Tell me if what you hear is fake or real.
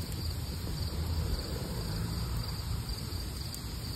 fake